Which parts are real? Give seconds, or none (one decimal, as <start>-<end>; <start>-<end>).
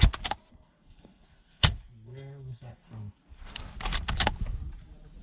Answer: 0.0-0.5; 3.6-5.2